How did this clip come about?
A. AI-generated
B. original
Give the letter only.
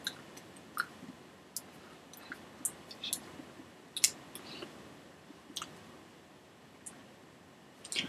B